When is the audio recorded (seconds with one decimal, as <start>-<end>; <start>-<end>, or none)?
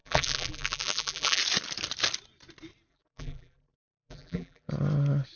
1.4-2.9; 4.7-5.4